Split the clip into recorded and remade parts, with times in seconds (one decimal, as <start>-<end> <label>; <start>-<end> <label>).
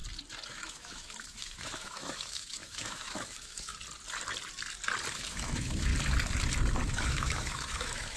0.0-0.5 recorded; 0.5-3.7 remade; 3.7-5.1 recorded; 5.1-5.9 remade; 5.9-6.9 recorded; 6.9-8.2 remade